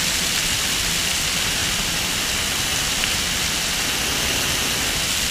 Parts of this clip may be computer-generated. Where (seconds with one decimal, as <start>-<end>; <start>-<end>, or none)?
none